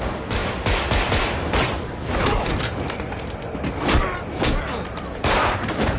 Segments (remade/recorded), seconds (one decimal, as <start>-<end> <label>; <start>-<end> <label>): 0.0-6.0 recorded